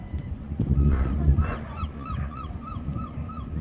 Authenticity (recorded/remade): remade